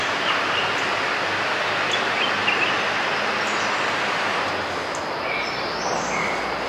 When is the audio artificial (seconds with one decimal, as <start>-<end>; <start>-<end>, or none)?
none

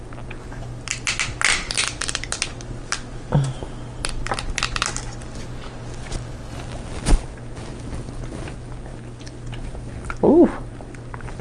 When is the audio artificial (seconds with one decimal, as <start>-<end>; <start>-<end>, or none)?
none